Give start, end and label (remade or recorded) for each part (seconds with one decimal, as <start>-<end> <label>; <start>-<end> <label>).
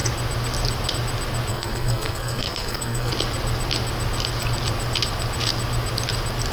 0.0-1.5 recorded; 1.5-3.1 remade; 3.1-6.5 recorded